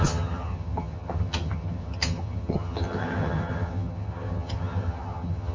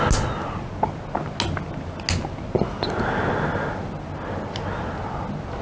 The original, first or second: second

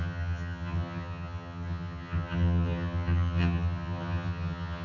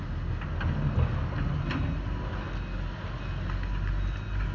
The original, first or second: second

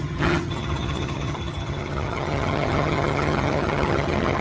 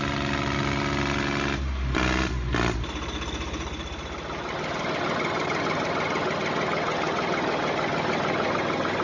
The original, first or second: second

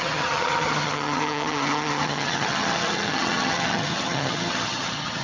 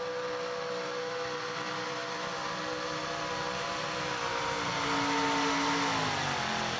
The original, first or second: second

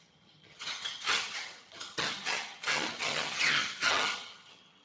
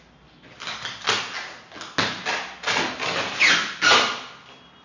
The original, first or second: second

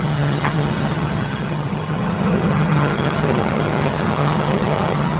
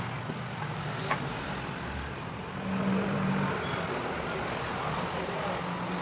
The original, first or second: second